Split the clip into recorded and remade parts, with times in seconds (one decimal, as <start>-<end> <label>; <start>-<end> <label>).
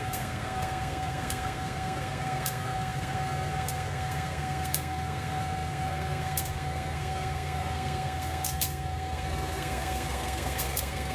0.0-11.1 remade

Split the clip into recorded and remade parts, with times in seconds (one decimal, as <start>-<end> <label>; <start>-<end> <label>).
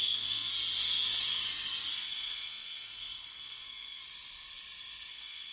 0.0-0.5 remade; 0.5-1.9 recorded; 1.9-4.0 remade; 4.0-5.1 recorded; 5.1-5.5 remade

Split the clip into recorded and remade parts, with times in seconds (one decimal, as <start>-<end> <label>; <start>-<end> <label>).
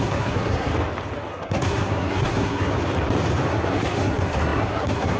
0.0-0.7 remade; 0.7-1.3 recorded; 1.3-2.7 remade; 2.7-3.5 recorded; 3.5-5.2 remade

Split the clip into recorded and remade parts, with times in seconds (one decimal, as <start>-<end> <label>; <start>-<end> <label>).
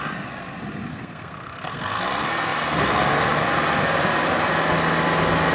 0.0-0.9 recorded; 0.9-2.0 remade; 2.0-5.5 recorded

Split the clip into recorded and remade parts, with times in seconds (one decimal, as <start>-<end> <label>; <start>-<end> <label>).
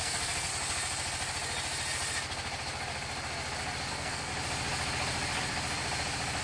0.0-0.5 remade; 0.5-3.9 recorded; 3.9-4.3 remade; 4.3-6.4 recorded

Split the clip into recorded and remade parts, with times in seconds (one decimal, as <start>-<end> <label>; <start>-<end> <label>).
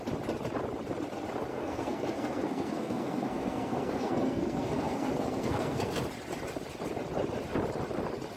0.0-1.5 recorded; 1.5-6.0 remade; 6.0-8.4 recorded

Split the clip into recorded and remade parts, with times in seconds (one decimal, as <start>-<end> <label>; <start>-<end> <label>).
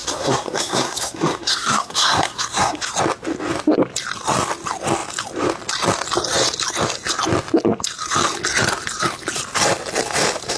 0.0-2.9 remade; 2.9-10.6 recorded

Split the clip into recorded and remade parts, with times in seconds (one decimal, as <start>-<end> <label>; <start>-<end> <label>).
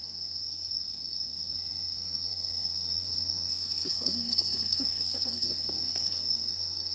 0.0-6.9 remade